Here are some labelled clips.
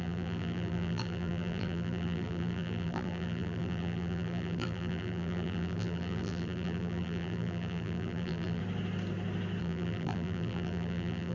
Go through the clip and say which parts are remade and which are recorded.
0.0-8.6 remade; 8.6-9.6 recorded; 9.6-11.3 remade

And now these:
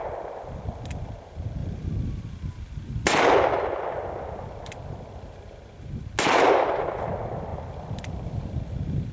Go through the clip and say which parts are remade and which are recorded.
0.0-1.6 recorded; 1.6-3.2 remade; 3.2-7.5 recorded; 7.5-9.1 remade

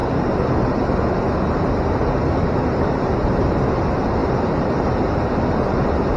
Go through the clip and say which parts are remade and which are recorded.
0.0-6.2 recorded

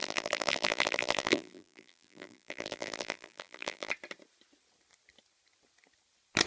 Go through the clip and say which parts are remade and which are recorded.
0.0-3.9 remade; 3.9-6.5 recorded

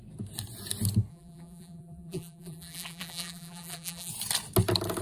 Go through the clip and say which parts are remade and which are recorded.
0.0-1.1 recorded; 1.1-4.1 remade; 4.1-5.0 recorded

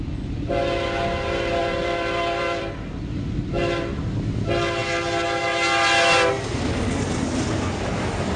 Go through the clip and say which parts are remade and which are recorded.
0.0-1.6 recorded; 1.6-4.0 remade; 4.0-8.4 recorded

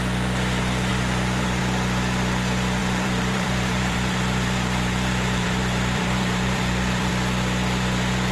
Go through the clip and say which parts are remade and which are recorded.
0.0-0.9 recorded; 0.9-1.6 remade; 1.6-2.8 recorded; 2.8-7.1 remade; 7.1-8.3 recorded